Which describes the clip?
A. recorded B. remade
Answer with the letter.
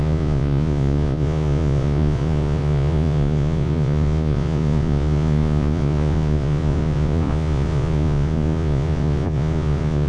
B